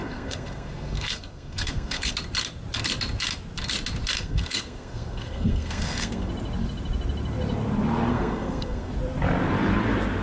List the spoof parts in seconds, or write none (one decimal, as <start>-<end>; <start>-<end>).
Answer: 0.0-2.1; 4.2-6.3; 8.1-8.9

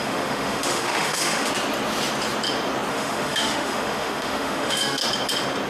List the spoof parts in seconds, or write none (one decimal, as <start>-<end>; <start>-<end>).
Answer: 0.0-1.5; 2.9-5.0

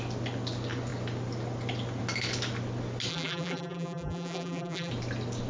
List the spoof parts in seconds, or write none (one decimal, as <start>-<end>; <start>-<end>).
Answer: 3.1-4.9

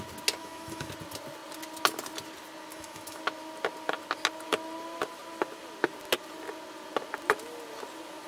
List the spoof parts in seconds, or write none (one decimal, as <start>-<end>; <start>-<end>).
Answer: 0.4-0.9; 2.7-3.2

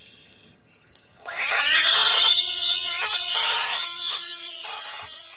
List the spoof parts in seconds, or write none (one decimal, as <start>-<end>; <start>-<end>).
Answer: 0.0-5.4

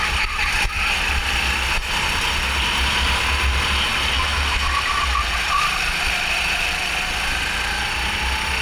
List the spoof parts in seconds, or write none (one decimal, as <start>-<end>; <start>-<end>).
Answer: none